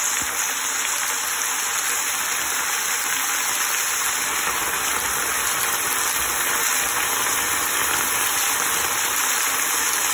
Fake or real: real